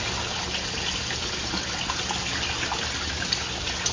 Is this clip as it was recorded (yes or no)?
yes